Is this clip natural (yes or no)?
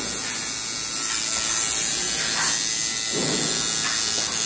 yes